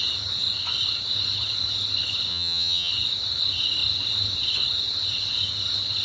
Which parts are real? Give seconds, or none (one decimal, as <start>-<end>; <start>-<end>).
0.0-2.3; 2.9-6.0